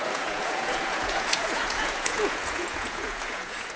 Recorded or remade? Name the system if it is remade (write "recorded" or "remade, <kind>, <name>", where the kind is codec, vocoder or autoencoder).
remade, vocoder, Vocos